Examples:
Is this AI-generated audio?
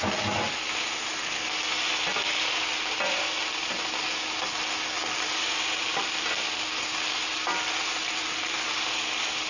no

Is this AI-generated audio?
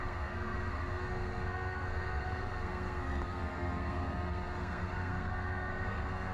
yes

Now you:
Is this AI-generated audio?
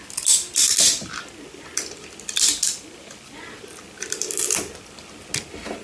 no